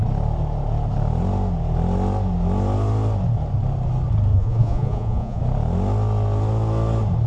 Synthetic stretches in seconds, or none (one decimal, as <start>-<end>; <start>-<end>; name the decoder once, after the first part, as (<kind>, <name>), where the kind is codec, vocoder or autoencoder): 4.3-5.4 (vocoder, Vocos)

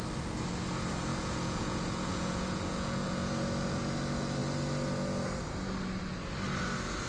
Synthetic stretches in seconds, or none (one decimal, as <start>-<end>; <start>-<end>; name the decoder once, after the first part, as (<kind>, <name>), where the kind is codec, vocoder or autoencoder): 1.1-3.3 (vocoder, Vocos)

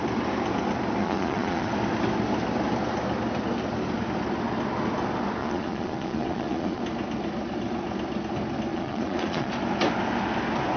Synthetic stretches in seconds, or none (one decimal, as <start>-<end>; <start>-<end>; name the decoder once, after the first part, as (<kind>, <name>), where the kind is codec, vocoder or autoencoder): 1.0-1.7 (vocoder, Vocos); 5.4-6.8; 8.7-9.5

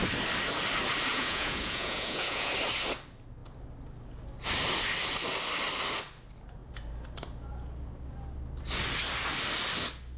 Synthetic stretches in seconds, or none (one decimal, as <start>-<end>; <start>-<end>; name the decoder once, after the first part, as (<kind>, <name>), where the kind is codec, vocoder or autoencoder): 1.1-2.5 (vocoder, Vocos)

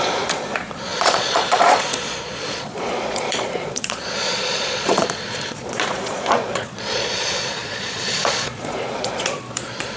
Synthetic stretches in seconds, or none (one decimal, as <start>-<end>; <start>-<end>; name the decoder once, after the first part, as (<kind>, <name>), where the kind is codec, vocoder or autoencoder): 0.0-10.0 (vocoder, Vocos)